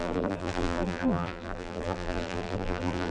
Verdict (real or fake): fake